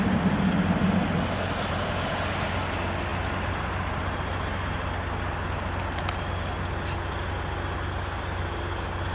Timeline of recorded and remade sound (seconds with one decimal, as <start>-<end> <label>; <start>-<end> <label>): 0.0-9.1 recorded